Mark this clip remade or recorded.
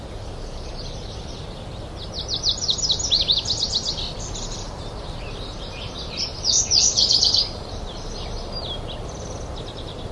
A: remade